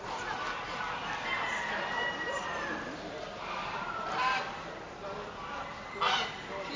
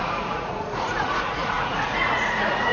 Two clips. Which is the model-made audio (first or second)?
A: second